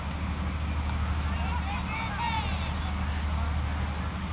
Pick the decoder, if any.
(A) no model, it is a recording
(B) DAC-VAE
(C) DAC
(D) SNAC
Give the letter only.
A